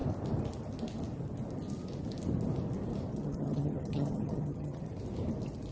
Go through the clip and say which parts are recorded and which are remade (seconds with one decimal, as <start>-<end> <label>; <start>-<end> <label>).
0.0-3.1 recorded; 3.1-4.8 remade; 4.8-5.7 recorded

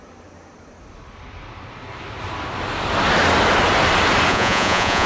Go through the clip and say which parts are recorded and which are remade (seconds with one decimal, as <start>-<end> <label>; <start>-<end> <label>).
0.0-4.3 recorded; 4.3-5.1 remade

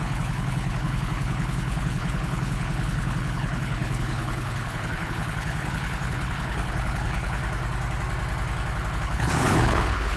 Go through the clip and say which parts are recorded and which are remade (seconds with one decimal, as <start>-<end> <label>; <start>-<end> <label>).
0.0-7.4 remade; 7.4-9.0 recorded; 9.0-10.2 remade

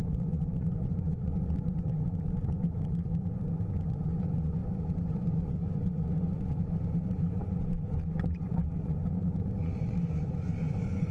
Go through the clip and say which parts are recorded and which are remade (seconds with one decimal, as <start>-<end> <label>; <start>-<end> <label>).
0.0-11.1 remade